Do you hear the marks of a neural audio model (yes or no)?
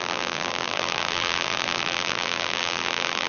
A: yes